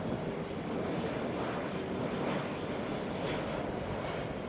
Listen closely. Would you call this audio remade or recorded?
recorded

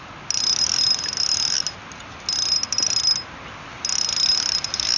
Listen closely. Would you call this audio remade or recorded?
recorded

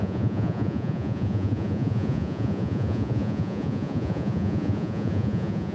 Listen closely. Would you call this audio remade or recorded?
remade